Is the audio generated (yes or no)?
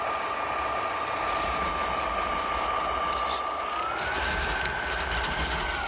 no